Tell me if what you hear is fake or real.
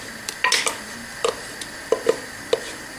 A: real